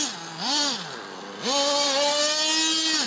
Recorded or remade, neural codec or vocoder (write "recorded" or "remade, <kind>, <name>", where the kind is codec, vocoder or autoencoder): recorded